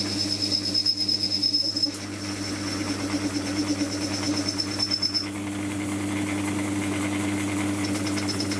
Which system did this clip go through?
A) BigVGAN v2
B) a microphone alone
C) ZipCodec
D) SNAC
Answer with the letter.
B